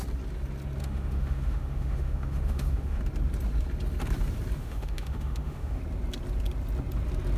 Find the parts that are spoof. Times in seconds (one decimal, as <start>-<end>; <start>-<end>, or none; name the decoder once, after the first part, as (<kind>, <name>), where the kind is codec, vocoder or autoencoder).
0.8-3.0 (autoencoder, DAC-VAE); 4.6-5.8